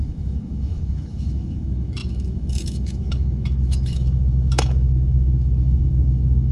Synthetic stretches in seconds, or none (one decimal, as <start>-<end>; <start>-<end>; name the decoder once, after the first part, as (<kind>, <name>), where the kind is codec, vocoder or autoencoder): 0.0-6.5 (autoencoder, DAC-VAE)